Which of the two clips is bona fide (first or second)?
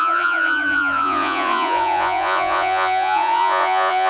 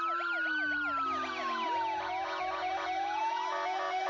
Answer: second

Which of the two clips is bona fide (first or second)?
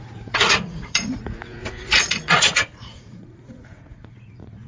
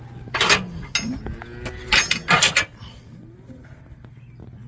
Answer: second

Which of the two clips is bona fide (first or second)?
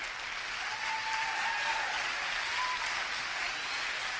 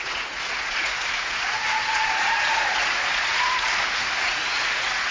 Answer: first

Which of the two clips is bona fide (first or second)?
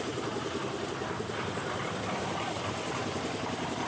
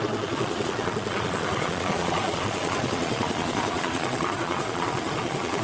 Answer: first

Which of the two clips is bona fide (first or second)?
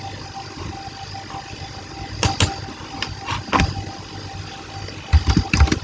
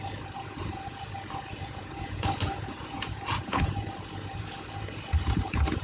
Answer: first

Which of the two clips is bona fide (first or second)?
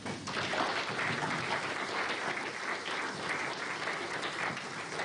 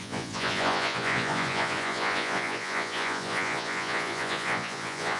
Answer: first